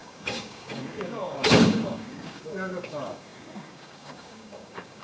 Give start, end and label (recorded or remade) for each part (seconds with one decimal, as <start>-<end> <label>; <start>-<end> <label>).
0.0-5.0 remade